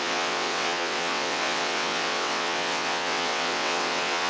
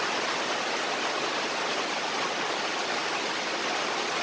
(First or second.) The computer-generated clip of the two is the first